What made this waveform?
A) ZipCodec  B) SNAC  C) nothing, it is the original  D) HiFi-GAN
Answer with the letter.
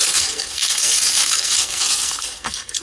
B